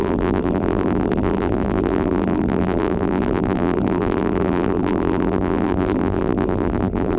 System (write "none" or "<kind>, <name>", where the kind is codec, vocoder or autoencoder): vocoder, BigVGAN v2